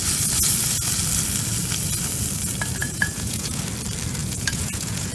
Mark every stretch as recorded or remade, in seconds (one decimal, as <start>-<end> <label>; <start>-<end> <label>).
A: 0.0-2.8 recorded; 2.8-3.6 remade; 3.6-4.2 recorded; 4.2-5.1 remade